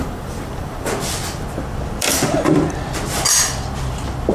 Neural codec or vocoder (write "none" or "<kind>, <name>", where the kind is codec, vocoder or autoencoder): vocoder, BigVGAN v2